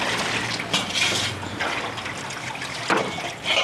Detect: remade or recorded recorded